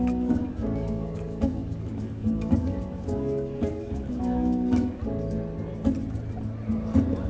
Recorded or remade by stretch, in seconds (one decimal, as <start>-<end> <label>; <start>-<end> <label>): 0.0-5.0 remade; 5.0-7.3 recorded